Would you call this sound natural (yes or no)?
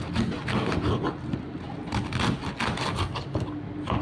yes